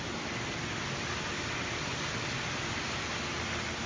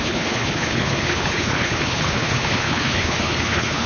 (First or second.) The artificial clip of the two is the second